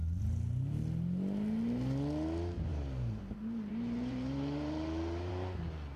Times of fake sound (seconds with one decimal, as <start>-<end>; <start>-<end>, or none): 2.7-3.2; 3.7-5.3